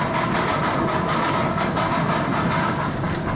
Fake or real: real